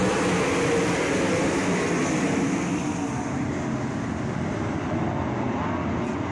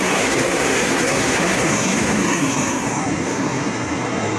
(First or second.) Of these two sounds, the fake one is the second